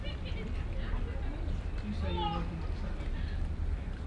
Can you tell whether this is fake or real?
real